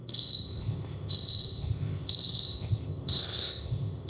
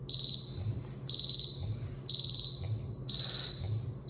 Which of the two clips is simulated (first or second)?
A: first